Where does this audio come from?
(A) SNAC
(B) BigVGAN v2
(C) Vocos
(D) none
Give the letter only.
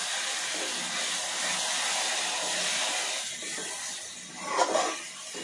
D